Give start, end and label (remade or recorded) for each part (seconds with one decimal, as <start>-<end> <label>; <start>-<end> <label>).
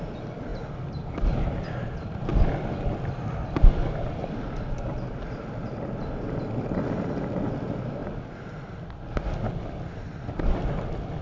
0.0-11.2 recorded